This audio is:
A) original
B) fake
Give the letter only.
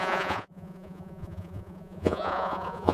B